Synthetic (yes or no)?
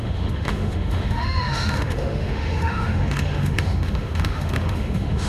yes